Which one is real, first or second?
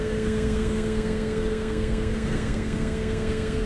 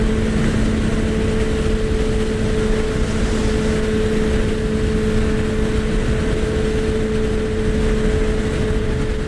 second